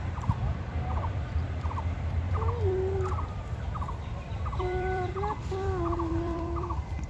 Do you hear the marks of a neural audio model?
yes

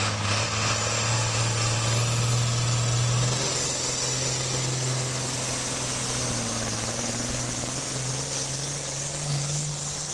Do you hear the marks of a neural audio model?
no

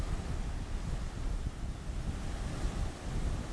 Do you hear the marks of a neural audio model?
no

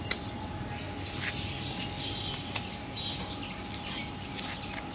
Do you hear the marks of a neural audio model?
no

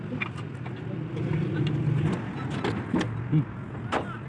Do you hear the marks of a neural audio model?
no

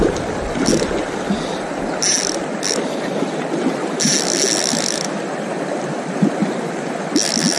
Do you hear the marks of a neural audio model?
no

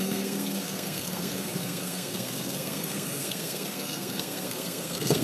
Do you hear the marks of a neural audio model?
yes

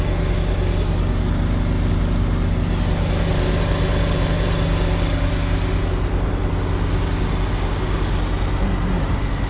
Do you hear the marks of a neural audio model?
no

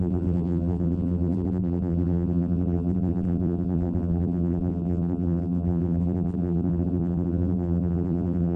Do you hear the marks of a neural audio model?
yes